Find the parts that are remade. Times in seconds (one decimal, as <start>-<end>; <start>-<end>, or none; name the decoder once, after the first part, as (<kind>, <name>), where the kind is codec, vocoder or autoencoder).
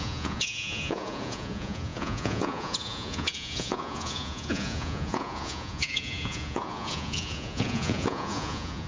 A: 0.0-8.9 (vocoder, Vocos)